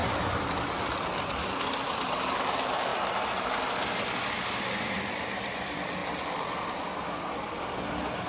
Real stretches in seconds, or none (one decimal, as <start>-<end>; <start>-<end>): 2.9-4.9; 6.0-8.3